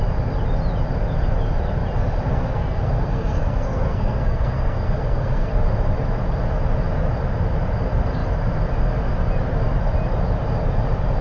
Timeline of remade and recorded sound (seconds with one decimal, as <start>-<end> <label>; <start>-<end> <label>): 0.0-2.3 recorded; 2.3-5.5 remade; 5.5-11.2 recorded